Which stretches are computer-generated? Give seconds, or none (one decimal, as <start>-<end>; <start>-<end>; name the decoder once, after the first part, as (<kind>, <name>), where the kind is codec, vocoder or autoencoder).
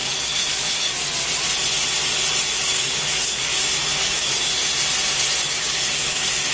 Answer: 0.0-1.0 (codec, DAC); 2.6-3.5; 4.0-4.6; 5.5-6.5